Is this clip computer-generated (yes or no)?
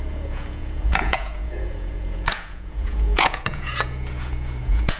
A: yes